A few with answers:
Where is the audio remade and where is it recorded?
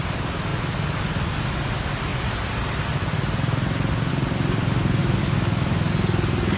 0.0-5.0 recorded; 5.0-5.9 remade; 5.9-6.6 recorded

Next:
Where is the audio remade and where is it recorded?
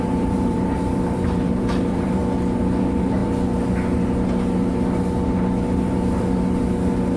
0.0-2.2 remade; 2.2-2.8 recorded; 2.8-3.2 remade; 3.2-7.2 recorded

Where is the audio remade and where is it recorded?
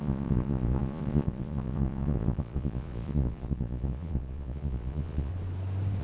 0.0-5.3 remade; 5.3-6.0 recorded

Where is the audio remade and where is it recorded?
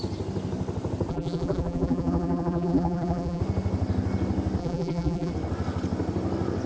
0.0-1.1 recorded; 1.1-3.4 remade; 3.4-4.6 recorded; 4.6-5.3 remade; 5.3-6.7 recorded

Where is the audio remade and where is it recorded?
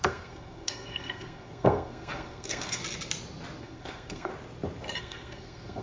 0.0-2.8 remade; 2.8-3.6 recorded; 3.6-4.3 remade; 4.3-5.0 recorded; 5.0-5.8 remade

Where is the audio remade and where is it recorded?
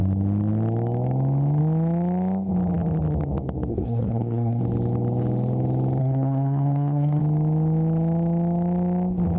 0.0-3.7 recorded; 3.7-4.6 remade; 4.6-6.0 recorded; 6.0-7.2 remade; 7.2-9.4 recorded